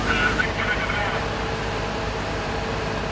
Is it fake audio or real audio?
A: fake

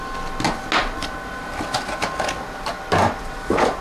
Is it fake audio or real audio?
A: real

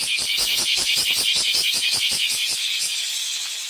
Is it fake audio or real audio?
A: fake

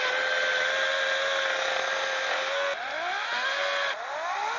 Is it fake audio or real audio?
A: real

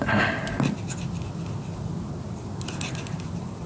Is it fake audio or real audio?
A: real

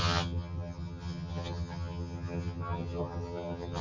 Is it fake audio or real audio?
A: fake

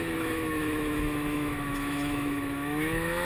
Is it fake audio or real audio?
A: fake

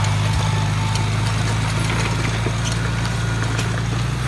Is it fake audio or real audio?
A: real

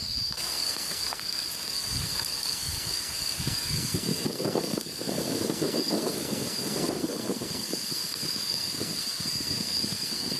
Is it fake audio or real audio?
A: fake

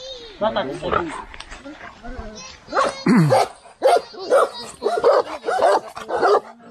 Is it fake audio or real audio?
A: real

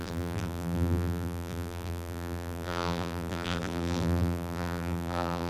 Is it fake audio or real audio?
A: fake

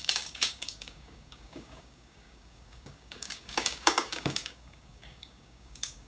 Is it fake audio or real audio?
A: fake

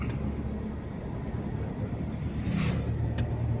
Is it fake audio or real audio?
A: real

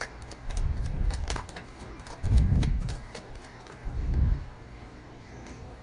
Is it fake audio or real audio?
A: fake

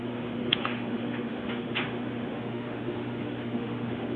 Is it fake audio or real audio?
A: fake